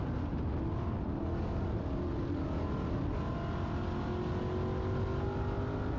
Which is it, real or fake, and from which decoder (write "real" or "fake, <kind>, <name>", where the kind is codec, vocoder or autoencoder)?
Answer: real